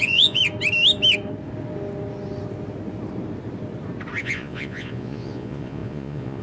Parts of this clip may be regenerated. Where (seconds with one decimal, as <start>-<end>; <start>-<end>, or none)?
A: 0.0-0.4; 4.2-6.4